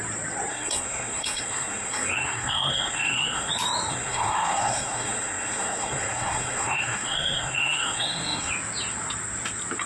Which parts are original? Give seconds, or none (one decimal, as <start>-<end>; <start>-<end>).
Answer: 0.0-0.5; 3.5-3.9; 8.5-9.9